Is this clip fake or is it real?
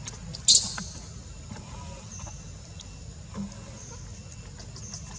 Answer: real